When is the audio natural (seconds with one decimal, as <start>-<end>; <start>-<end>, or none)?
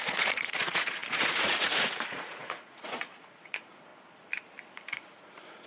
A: 3.9-4.8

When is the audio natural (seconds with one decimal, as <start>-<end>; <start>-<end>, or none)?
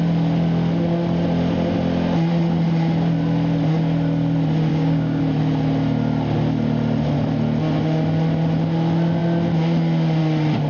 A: 0.0-4.7; 5.2-10.7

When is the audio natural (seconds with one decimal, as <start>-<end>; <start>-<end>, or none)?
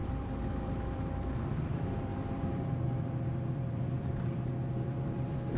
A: none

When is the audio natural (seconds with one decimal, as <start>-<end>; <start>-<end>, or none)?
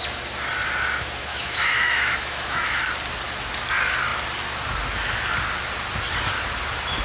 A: 0.0-1.3; 2.8-7.0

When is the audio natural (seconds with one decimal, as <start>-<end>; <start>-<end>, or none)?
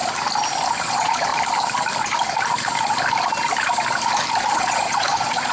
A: 0.0-0.8; 1.3-4.6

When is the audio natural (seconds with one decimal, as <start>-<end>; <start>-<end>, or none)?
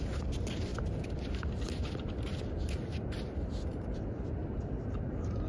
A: 0.0-0.7; 4.0-4.4; 5.1-5.5